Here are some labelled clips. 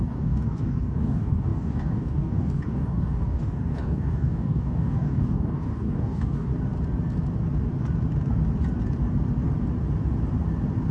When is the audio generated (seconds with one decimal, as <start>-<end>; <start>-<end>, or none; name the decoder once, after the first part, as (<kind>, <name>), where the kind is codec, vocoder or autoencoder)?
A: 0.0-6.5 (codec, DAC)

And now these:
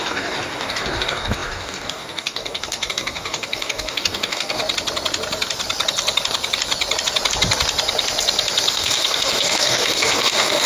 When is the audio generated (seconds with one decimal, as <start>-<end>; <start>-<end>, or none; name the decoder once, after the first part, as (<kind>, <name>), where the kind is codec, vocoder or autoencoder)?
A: 0.0-4.6 (codec, DAC); 8.7-10.7

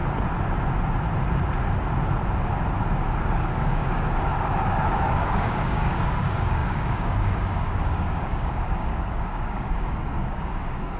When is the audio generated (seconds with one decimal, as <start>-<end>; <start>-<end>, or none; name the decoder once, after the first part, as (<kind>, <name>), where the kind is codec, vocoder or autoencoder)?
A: 3.2-11.0 (codec, DAC)

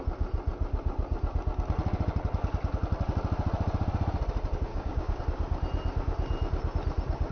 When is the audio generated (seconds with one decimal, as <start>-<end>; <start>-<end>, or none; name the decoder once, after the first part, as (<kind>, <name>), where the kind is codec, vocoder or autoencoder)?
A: 4.7-5.2 (codec, DAC)

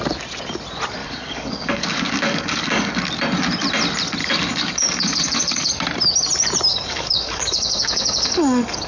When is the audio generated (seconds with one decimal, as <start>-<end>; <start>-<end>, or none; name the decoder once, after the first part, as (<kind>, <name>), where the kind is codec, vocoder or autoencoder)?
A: 1.0-3.0 (codec, DAC); 4.2-5.7; 6.7-8.9